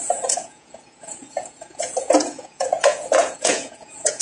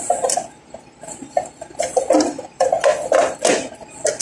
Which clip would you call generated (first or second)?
first